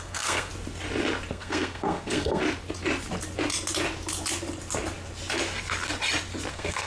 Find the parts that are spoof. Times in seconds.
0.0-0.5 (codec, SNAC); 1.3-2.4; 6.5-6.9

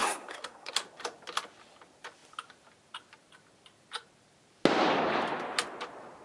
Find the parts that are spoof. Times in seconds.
0.0-0.7 (codec, SNAC)

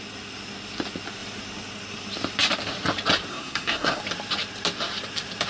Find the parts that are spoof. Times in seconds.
3.3-4.0 (codec, SNAC)

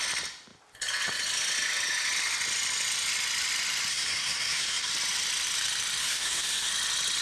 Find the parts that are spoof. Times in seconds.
3.9-4.9 (codec, SNAC); 6.0-6.7

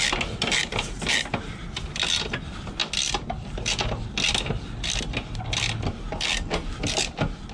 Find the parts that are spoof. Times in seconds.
none

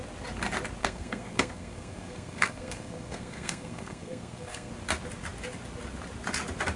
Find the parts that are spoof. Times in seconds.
0.8-4.7 (codec, SNAC)

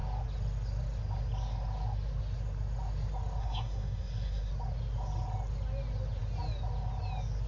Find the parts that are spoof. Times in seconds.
3.4-4.5 (codec, SNAC)